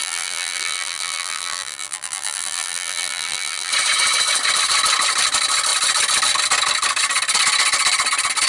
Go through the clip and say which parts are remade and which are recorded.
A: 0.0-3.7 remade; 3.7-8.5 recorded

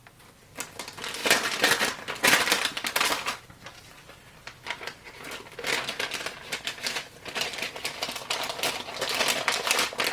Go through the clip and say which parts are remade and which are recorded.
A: 0.0-10.1 recorded

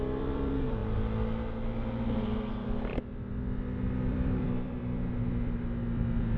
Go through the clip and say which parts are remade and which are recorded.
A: 0.0-0.8 remade; 0.8-2.2 recorded; 2.2-2.9 remade; 2.9-4.1 recorded; 4.1-6.4 remade

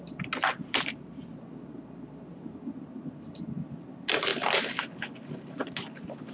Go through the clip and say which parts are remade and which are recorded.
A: 0.0-0.6 recorded; 0.6-1.3 remade; 1.3-6.3 recorded

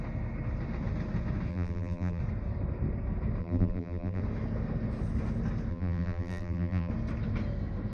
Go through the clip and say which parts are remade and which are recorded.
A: 0.0-1.5 recorded; 1.5-2.2 remade; 2.2-3.4 recorded; 3.4-4.2 remade; 4.2-5.7 recorded; 5.7-6.9 remade; 6.9-7.9 recorded

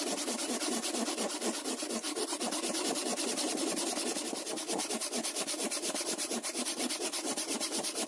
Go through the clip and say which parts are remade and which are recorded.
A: 0.0-3.1 remade; 3.1-4.9 recorded; 4.9-8.1 remade

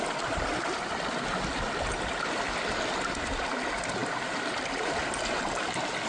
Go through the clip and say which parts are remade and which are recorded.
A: 0.0-6.1 recorded